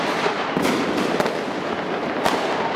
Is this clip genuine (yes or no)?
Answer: yes